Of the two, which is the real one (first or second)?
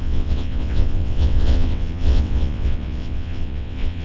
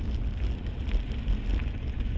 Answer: second